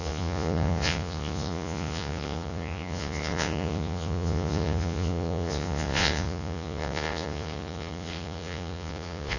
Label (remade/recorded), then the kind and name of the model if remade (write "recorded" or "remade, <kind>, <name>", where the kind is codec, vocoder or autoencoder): remade, vocoder, Vocos